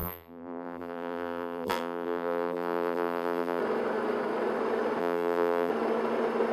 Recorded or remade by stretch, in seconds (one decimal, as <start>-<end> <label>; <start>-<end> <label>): 0.0-3.6 remade; 3.6-5.0 recorded; 5.0-5.7 remade; 5.7-6.5 recorded